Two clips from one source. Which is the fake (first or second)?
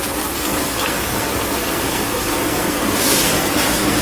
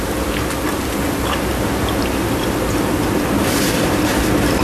first